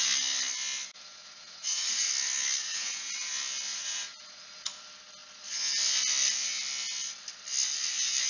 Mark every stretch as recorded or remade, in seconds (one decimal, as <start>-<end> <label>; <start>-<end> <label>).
0.0-1.2 recorded; 1.2-2.1 remade; 2.1-2.6 recorded; 2.6-3.3 remade; 3.3-3.7 recorded; 3.7-4.8 remade; 4.8-8.3 recorded

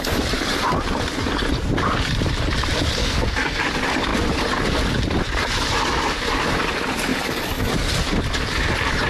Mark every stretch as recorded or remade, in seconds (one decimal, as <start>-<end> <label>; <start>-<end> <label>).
0.0-3.0 recorded; 3.0-3.6 remade; 3.6-9.1 recorded

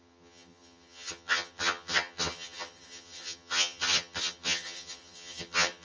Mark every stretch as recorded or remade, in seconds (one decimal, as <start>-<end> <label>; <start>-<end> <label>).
0.0-5.8 remade

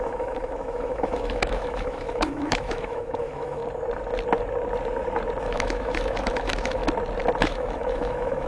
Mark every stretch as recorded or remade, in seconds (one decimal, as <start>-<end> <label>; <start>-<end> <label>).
0.0-3.6 remade; 3.6-5.4 recorded; 5.4-6.8 remade; 6.8-7.4 recorded; 7.4-8.5 remade

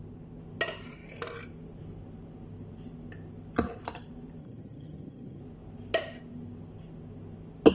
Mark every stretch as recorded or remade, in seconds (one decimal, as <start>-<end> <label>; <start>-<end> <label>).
0.0-4.4 recorded; 4.4-5.4 remade; 5.4-7.7 recorded

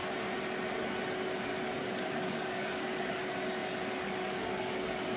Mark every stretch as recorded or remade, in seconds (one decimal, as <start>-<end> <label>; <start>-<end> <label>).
0.0-1.8 recorded; 1.8-5.2 remade

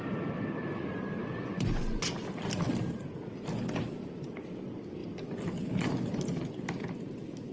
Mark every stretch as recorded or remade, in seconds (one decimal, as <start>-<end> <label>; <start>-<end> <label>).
0.0-1.2 recorded; 1.2-2.1 remade; 2.1-7.5 recorded

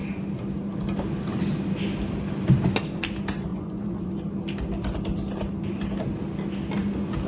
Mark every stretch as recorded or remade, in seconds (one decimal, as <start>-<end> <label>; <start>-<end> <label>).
0.0-3.5 recorded; 3.5-4.1 remade; 4.1-7.3 recorded